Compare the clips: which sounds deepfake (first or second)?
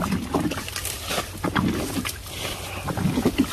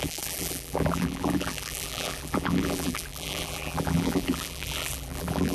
second